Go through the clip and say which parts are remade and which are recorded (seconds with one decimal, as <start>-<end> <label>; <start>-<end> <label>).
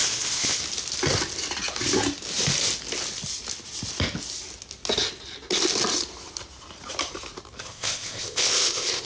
0.0-0.6 remade; 0.6-7.6 recorded; 7.6-9.1 remade